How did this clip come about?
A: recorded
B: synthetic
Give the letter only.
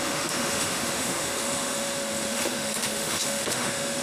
B